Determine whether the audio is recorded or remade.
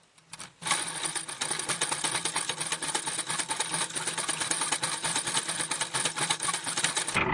recorded